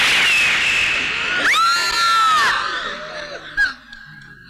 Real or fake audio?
real